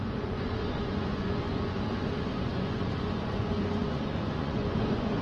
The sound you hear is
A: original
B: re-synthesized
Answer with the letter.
B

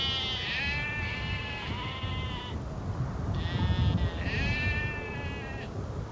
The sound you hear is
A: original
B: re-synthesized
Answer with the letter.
A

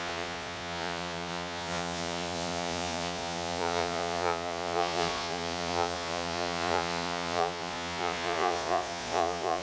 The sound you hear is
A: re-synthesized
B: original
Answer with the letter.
A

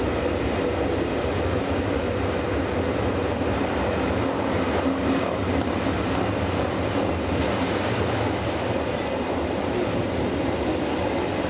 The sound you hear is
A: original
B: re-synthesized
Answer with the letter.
A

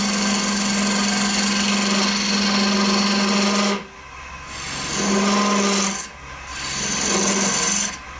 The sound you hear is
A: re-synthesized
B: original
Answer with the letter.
B